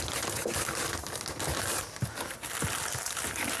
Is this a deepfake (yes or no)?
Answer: no